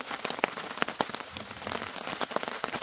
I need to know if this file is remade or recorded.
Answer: recorded